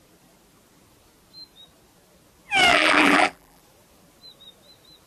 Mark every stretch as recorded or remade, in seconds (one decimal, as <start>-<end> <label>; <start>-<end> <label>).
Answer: 0.0-2.7 recorded; 2.7-3.6 remade; 3.6-5.1 recorded